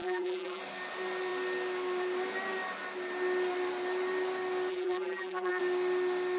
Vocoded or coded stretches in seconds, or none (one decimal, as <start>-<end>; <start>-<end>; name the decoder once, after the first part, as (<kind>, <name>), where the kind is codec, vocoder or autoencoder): 0.0-0.6 (vocoder, BigVGAN v2); 4.7-5.6